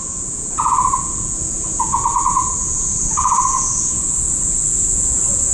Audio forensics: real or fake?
fake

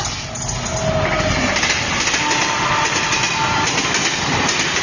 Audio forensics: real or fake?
real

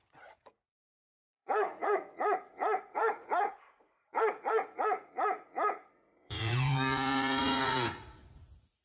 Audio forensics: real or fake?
fake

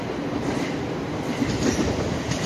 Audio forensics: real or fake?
real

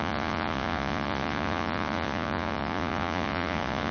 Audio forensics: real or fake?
fake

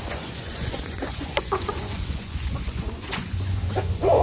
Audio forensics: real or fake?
fake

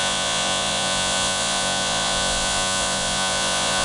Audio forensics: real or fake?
fake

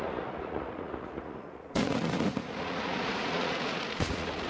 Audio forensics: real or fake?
fake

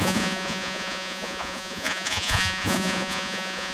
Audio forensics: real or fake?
fake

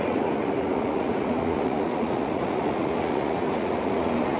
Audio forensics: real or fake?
fake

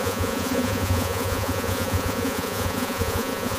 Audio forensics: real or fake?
fake